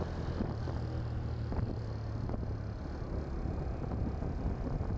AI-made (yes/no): no